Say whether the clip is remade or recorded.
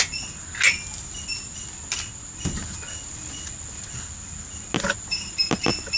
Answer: recorded